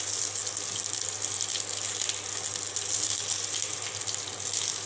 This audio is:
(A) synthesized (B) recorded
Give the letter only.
B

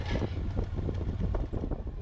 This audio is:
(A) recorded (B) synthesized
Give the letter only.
B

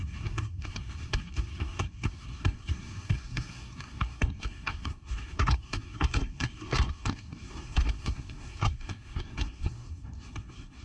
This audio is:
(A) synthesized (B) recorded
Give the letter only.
A